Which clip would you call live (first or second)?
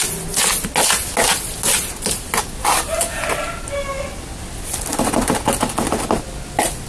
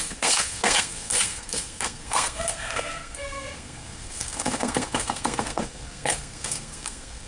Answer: first